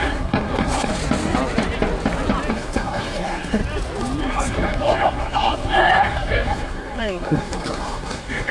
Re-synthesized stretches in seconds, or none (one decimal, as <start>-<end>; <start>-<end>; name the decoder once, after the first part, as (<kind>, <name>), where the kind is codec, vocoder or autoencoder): 0.0-0.9 (codec, SNAC); 2.5-3.6; 4.2-8.5